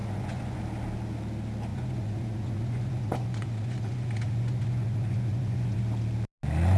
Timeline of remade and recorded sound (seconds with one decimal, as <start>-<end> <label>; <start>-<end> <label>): 0.0-0.6 remade; 0.6-1.7 recorded; 1.7-5.8 remade; 5.8-6.8 recorded